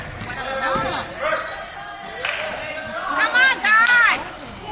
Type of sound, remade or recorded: recorded